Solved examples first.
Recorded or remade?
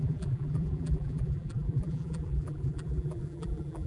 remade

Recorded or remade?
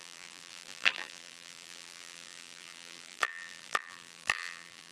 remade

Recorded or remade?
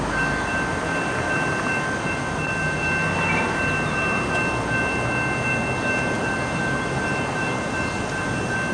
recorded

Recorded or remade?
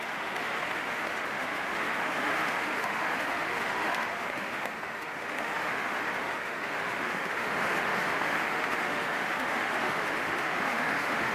remade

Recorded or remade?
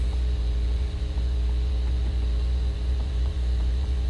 remade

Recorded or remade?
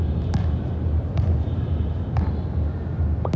recorded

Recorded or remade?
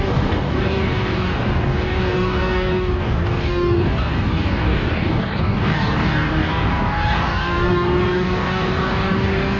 remade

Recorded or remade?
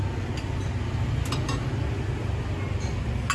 recorded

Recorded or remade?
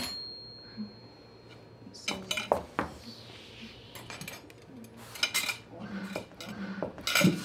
recorded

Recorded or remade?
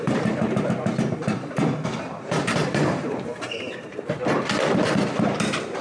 remade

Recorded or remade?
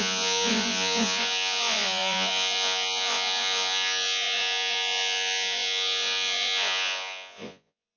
remade